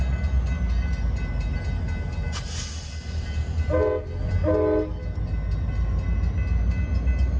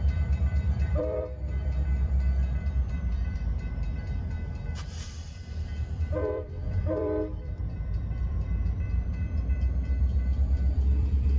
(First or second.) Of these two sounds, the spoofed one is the second